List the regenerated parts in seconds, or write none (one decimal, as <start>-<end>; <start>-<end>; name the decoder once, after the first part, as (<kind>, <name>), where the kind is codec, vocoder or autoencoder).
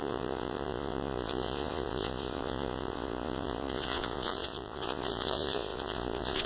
0.0-6.5 (vocoder, Vocos)